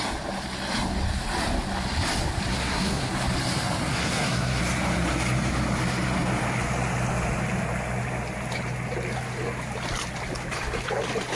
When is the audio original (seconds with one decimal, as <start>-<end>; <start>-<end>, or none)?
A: 0.0-2.5; 3.1-3.9; 4.6-11.4